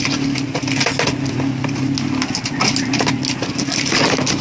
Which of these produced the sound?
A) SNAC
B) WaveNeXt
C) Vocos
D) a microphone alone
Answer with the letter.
D